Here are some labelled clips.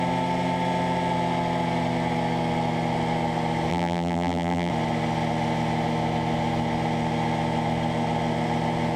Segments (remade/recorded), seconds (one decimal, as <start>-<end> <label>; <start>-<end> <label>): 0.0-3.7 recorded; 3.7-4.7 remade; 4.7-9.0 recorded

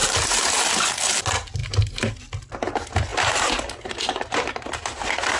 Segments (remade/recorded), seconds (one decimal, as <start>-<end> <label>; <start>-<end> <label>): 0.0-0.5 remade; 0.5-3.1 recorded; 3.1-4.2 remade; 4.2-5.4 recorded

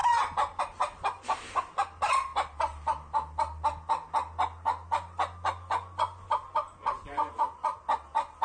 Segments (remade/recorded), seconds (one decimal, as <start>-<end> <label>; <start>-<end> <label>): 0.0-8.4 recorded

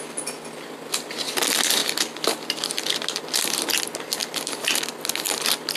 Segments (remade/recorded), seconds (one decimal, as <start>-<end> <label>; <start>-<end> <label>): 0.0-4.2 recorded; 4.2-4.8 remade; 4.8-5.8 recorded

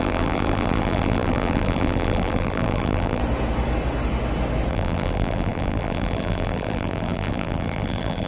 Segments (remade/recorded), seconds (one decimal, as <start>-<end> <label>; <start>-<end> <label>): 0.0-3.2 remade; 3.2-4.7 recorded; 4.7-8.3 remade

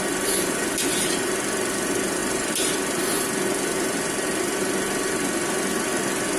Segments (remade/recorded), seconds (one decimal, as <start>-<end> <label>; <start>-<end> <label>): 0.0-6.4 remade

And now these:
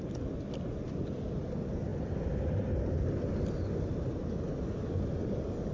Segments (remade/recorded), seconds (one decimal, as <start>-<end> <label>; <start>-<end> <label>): 0.0-5.7 recorded

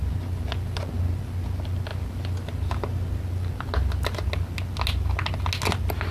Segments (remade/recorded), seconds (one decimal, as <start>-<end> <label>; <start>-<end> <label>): 0.0-6.1 recorded